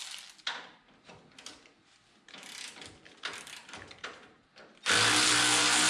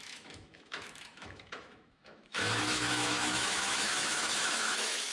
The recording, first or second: first